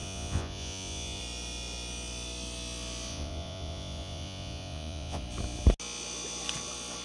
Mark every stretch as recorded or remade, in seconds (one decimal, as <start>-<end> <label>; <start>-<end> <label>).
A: 0.0-1.2 remade; 1.2-3.1 recorded; 3.1-5.2 remade; 5.2-7.0 recorded